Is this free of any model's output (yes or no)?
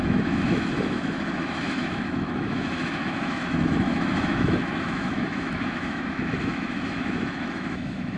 no